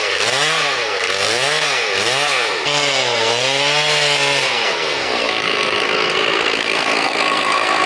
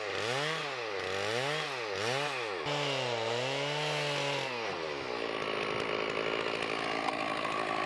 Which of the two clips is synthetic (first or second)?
first